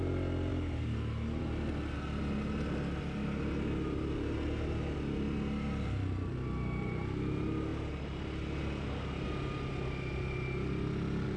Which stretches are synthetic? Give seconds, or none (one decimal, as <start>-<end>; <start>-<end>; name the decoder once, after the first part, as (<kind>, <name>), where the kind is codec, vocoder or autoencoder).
none